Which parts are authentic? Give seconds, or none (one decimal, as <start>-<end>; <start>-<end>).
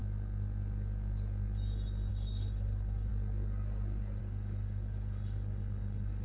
0.0-2.1; 3.1-4.2